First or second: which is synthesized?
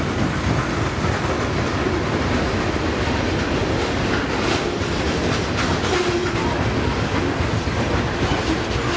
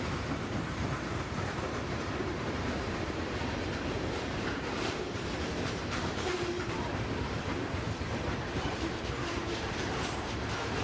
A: second